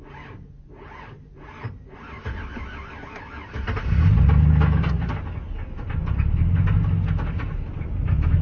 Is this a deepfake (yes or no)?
no